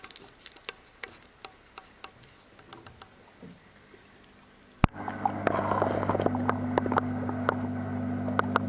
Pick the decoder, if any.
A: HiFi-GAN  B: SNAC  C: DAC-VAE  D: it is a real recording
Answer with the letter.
D